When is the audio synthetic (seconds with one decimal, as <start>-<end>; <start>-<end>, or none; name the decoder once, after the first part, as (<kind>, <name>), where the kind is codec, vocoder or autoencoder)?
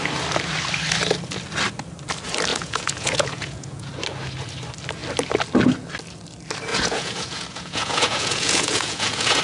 2.5-3.9 (vocoder, Vocos); 6.7-9.4